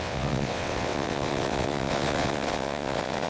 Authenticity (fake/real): fake